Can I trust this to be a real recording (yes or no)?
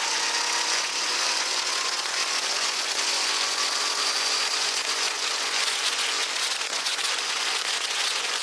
no